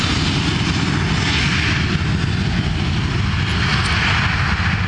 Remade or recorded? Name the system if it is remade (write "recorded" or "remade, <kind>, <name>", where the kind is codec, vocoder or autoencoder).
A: recorded